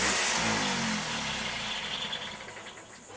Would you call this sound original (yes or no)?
yes